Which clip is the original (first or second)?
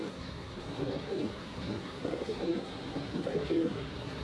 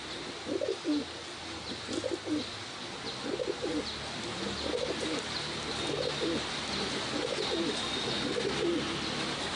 second